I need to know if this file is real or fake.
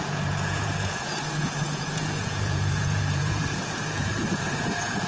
fake